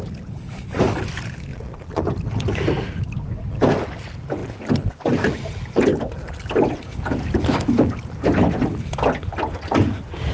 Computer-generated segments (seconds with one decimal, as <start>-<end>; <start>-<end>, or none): 1.5-2.0